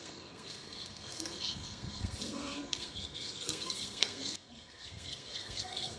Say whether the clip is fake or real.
fake